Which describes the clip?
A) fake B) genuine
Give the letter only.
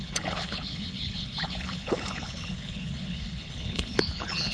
A